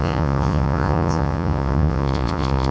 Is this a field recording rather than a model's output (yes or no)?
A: no